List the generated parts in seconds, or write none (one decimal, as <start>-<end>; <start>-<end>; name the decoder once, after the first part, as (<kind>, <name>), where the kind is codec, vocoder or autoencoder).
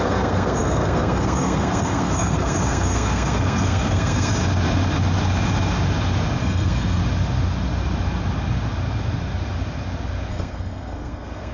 0.0-4.3 (codec, SNAC); 6.4-7.0; 10.3-11.5